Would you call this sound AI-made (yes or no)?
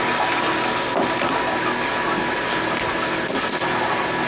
no